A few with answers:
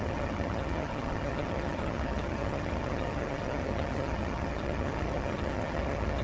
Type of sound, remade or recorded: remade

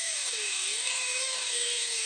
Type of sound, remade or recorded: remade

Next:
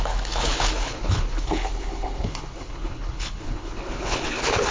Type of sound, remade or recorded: remade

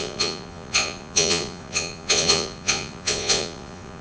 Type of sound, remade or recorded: remade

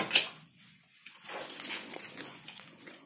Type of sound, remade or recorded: remade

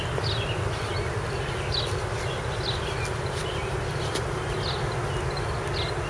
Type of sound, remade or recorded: recorded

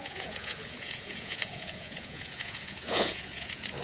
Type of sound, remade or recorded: remade